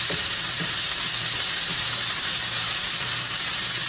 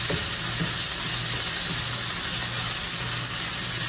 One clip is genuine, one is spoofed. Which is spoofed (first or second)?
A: first